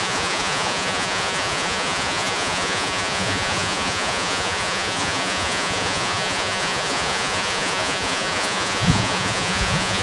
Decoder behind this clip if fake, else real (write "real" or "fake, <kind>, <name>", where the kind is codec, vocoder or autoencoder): fake, vocoder, Vocos